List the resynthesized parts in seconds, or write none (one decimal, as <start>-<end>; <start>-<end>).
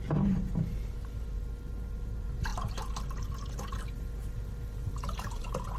0.0-5.8